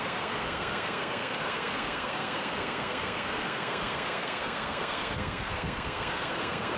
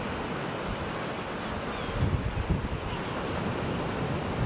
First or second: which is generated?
first